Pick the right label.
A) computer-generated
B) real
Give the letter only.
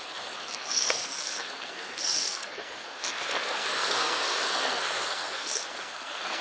A